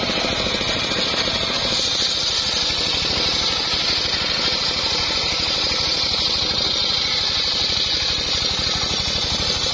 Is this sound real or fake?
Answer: real